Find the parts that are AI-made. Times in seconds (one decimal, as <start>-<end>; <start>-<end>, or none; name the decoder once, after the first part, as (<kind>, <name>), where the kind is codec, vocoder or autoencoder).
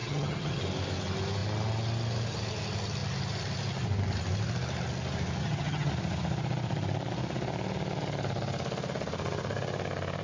0.0-0.6 (vocoder, HiFi-GAN); 5.4-5.9